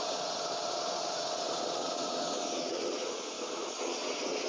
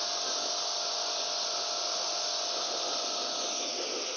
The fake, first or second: first